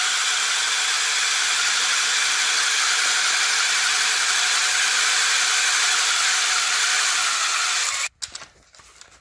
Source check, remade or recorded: recorded